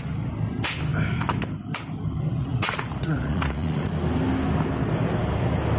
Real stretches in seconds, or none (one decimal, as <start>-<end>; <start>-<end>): 0.0-2.4; 3.9-5.8